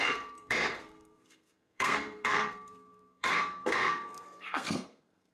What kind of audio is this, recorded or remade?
remade